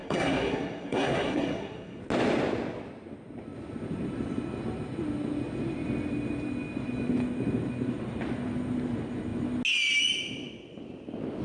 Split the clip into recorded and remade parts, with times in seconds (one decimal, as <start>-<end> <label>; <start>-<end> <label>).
0.0-2.0 remade; 2.0-11.4 recorded